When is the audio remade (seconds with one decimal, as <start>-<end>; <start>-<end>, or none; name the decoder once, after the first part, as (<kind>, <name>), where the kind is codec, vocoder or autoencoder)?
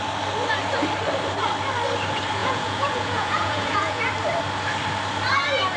2.4-4.0 (vocoder, Vocos)